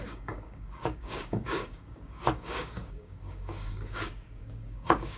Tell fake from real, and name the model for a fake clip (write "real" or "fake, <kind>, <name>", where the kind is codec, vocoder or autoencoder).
fake, codec, DAC